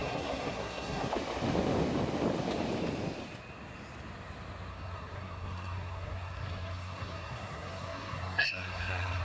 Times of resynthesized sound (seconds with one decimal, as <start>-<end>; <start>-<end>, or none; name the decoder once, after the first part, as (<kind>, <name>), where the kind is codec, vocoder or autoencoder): 0.0-1.1 (codec, SNAC); 4.7-9.2